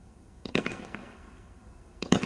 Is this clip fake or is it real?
fake